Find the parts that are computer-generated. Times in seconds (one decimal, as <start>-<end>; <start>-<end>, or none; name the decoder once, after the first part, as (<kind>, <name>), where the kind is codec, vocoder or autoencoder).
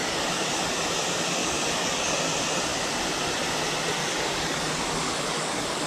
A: 0.0-0.7 (codec, DAC); 1.4-2.1; 4.0-5.9